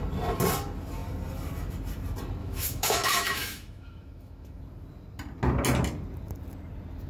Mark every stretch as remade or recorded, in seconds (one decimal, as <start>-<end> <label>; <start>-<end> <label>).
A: 0.0-2.4 recorded; 2.4-4.6 remade; 4.6-7.1 recorded